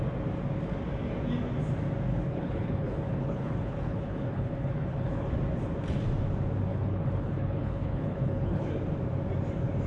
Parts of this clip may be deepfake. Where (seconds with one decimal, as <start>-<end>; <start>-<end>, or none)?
2.1-5.3; 6.7-8.7